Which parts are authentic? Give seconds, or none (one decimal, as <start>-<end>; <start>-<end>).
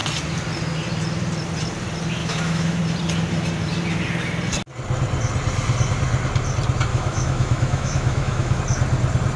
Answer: 0.0-2.2; 2.8-6.9; 8.6-9.4